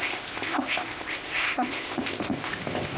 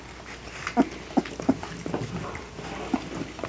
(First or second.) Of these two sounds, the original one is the second